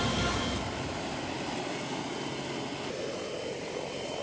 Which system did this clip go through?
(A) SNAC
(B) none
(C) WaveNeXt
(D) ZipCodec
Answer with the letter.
B